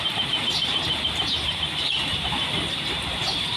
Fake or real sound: fake